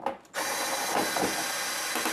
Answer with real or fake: real